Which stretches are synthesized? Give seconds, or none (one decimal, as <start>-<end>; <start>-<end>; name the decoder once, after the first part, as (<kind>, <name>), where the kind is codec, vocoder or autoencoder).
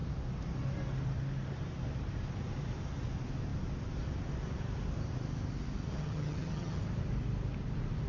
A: 5.9-6.8 (vocoder, HiFi-GAN)